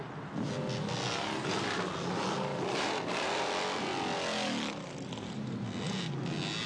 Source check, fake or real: real